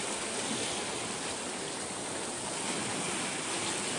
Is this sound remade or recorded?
recorded